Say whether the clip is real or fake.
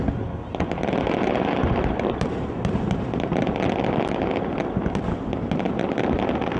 real